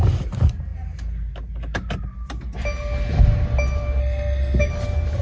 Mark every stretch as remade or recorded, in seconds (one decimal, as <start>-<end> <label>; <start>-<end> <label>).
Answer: 0.0-4.0 recorded; 4.0-4.7 remade; 4.7-5.2 recorded